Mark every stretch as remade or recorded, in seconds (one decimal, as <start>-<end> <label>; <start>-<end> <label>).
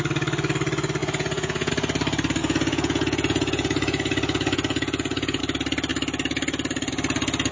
0.0-1.0 recorded; 1.0-1.7 remade; 1.7-2.4 recorded; 2.4-5.4 remade; 5.4-7.5 recorded